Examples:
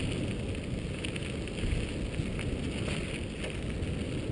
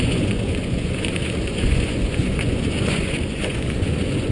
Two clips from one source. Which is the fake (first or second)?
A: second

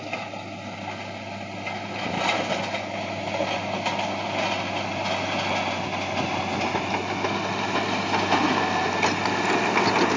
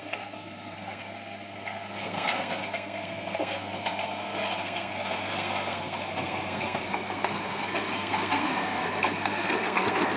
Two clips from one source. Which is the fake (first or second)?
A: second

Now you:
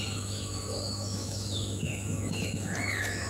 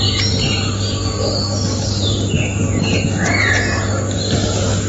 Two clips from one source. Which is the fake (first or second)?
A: first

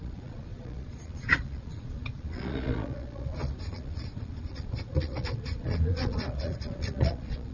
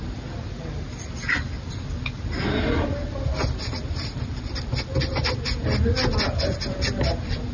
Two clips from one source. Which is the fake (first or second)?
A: first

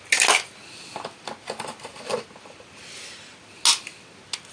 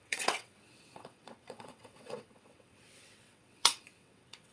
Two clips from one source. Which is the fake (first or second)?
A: second